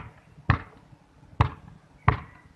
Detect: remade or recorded recorded